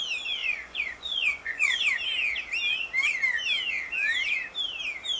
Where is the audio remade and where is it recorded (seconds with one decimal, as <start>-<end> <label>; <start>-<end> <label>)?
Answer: 0.0-0.4 recorded; 0.4-1.8 remade; 1.8-5.2 recorded